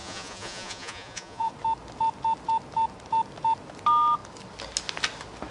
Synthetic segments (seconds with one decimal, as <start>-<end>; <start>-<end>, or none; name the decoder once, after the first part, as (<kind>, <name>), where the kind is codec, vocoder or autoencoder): 0.0-1.5 (vocoder, Vocos)